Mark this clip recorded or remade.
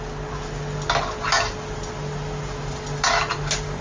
recorded